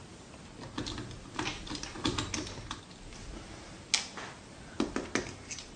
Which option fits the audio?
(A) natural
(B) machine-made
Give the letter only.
A